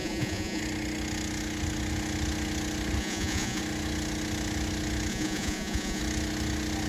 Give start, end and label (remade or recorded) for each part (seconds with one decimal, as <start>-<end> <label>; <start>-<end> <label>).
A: 0.0-0.6 remade; 0.6-3.0 recorded; 3.0-3.6 remade; 3.6-5.1 recorded; 5.1-6.0 remade; 6.0-6.9 recorded